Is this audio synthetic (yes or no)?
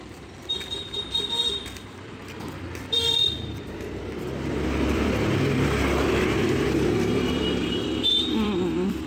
yes